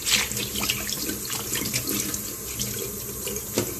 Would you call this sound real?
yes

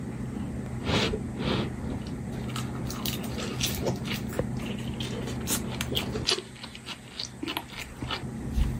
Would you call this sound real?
yes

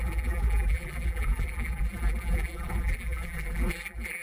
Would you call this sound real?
no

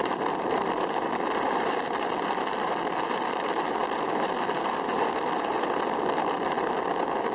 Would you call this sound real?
no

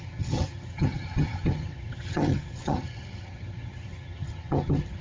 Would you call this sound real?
no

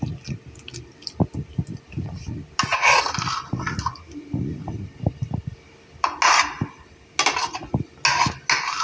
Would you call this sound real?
yes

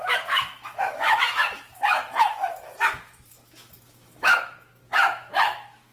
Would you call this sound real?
no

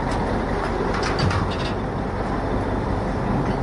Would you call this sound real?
yes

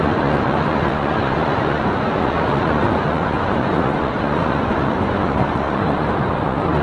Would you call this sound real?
no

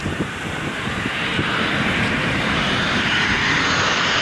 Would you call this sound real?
no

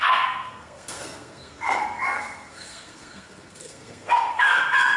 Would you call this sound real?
no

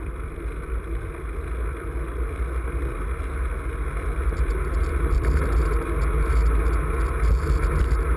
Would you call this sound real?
yes